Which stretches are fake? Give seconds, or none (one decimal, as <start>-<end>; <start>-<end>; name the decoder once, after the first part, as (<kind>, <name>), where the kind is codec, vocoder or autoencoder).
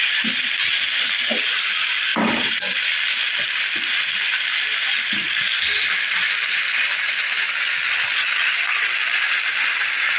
none